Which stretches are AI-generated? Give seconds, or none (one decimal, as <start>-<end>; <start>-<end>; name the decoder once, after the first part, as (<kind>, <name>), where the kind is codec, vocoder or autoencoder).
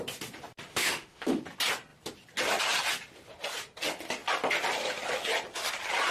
0.7-1.4 (autoencoder, DAC-VAE)